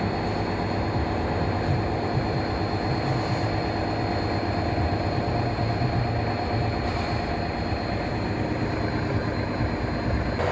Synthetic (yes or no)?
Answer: no